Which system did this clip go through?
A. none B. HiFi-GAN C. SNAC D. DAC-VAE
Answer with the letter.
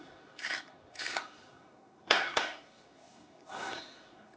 C